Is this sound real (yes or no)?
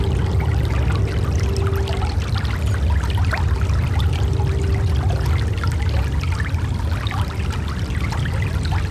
yes